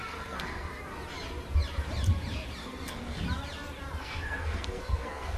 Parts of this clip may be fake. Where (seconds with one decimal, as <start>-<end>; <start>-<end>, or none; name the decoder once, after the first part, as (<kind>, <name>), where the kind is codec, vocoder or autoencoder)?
0.0-0.7 (codec, SNAC); 2.6-3.2; 4.0-5.4